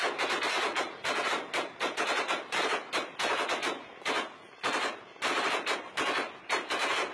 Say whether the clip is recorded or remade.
recorded